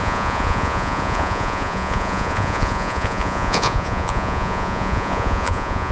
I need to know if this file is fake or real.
fake